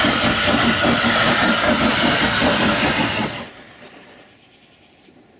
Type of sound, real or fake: real